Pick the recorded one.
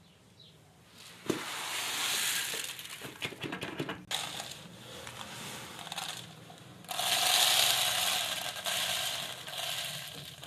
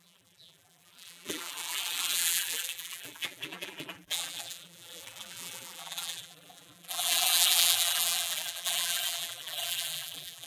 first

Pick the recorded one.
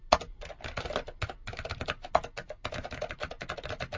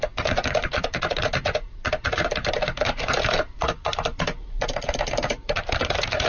first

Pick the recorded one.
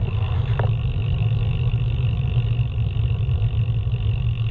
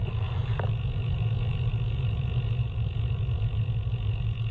first